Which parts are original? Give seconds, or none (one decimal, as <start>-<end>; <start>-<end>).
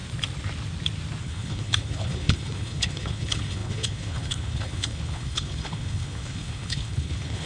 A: 0.0-1.2